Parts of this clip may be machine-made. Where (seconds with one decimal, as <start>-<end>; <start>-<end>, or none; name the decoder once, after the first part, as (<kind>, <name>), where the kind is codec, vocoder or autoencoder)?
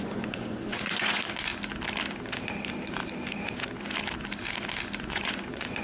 0.0-1.5 (vocoder, Vocos); 5.0-5.8